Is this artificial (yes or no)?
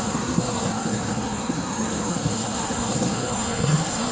yes